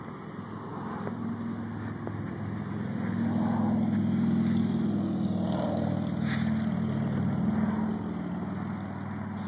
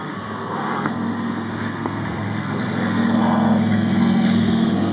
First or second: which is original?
first